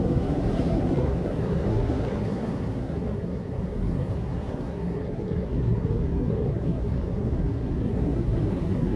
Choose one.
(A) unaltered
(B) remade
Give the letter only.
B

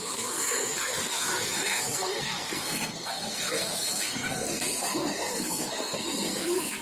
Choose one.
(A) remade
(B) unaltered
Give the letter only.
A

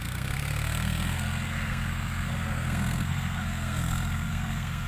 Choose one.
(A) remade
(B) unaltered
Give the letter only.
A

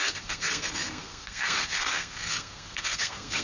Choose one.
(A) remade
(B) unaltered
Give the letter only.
A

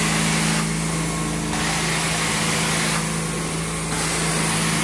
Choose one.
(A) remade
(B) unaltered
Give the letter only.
B